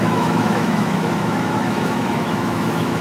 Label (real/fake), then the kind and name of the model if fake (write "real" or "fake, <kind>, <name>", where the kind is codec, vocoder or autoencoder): fake, autoencoder, DAC-VAE